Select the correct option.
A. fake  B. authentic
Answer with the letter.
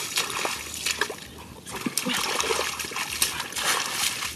B